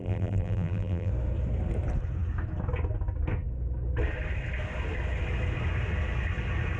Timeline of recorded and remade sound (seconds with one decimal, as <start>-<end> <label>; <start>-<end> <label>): 0.0-1.1 remade; 1.1-6.8 recorded